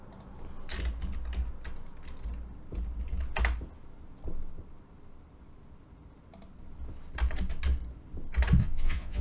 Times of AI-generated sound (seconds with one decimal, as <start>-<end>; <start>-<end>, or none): 8.6-9.2